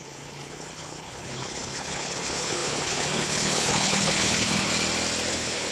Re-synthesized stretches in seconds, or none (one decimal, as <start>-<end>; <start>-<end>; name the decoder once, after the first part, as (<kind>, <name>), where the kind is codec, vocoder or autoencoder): 0.0-4.7 (codec, HILCodec); 5.3-5.7